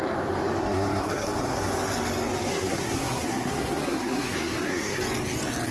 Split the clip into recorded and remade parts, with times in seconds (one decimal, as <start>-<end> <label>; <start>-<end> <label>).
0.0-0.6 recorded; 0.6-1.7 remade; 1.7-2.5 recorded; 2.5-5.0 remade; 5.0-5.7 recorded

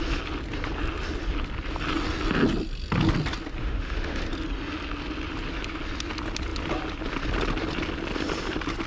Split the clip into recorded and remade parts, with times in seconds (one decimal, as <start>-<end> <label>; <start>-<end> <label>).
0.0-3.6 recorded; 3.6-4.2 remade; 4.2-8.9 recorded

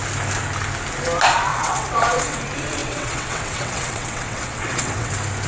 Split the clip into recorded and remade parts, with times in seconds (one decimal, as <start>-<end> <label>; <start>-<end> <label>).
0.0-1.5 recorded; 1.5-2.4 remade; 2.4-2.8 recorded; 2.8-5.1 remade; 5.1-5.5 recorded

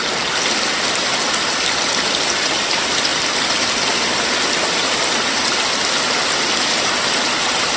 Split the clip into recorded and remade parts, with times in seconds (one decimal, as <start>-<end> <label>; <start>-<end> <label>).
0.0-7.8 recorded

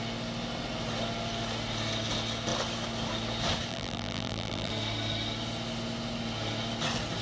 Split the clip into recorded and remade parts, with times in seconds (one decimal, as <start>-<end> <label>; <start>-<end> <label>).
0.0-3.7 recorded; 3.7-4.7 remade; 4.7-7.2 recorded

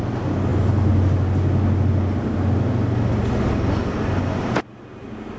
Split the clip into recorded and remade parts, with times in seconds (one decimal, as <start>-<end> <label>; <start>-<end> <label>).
0.0-5.4 recorded